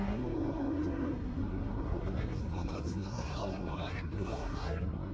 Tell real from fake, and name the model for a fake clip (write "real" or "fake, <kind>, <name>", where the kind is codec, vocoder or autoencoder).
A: fake, codec, SNAC